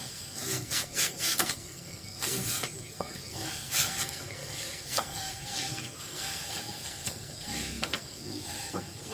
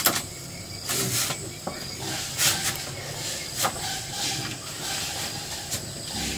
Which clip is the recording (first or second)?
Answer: second